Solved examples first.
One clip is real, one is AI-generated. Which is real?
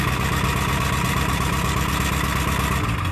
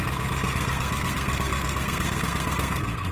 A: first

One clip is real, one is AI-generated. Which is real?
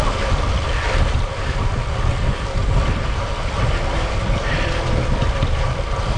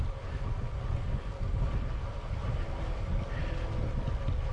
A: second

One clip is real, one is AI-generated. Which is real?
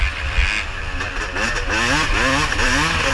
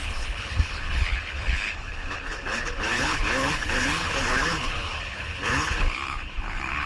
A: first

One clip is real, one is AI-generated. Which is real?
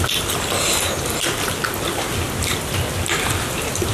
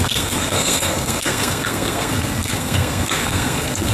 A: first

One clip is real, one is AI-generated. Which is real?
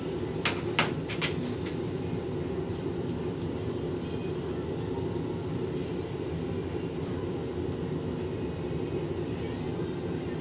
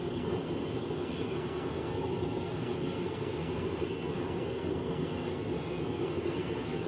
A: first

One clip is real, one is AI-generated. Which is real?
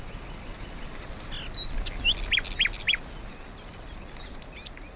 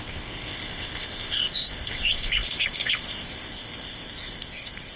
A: first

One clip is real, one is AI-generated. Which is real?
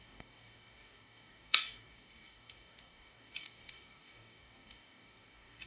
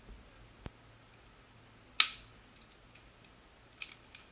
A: second